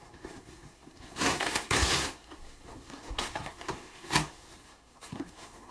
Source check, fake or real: fake